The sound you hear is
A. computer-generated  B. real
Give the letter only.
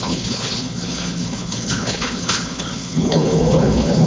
A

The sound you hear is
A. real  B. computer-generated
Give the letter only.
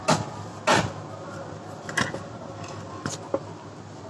A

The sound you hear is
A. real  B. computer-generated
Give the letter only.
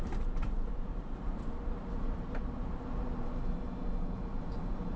B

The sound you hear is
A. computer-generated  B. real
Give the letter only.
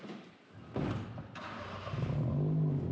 B